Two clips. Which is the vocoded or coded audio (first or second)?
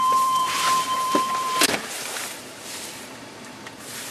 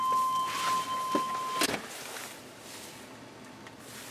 first